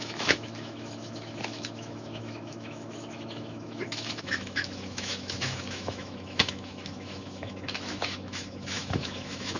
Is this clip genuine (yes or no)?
no